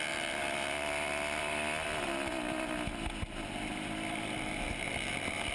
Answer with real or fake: real